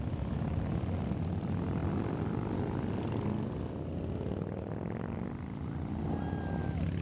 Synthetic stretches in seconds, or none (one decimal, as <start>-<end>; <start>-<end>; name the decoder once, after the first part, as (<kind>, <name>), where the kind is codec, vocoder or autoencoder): none